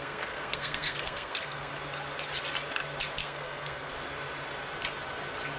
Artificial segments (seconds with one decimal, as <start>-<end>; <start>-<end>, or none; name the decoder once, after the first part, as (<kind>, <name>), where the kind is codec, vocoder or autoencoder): 0.0-1.7 (codec, SNAC); 3.2-3.9